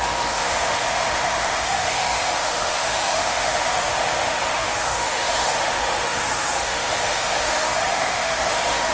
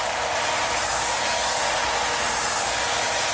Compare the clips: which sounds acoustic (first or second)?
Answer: second